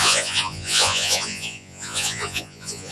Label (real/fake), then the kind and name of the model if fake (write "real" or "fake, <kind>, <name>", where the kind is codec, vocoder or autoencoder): fake, vocoder, Vocos